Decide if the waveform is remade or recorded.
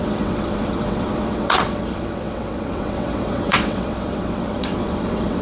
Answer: remade